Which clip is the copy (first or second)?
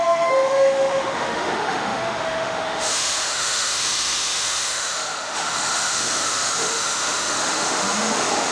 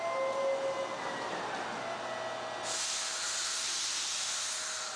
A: first